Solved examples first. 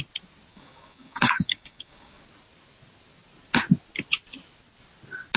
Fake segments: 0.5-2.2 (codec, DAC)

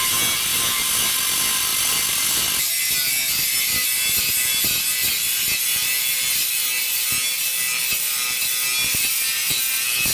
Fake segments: none